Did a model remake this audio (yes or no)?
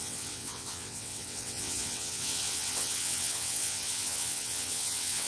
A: yes